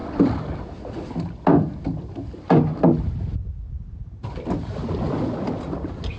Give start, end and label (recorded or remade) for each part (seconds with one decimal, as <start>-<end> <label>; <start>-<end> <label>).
0.0-6.2 recorded